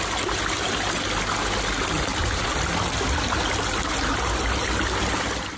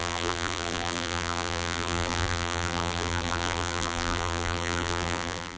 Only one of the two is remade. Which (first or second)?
second